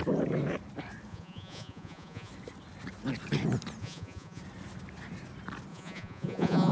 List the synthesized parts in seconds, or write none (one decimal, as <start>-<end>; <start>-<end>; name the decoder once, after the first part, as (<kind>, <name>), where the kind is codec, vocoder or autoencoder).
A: 1.1-2.3 (vocoder, Vocos); 3.8-4.4; 5.7-6.7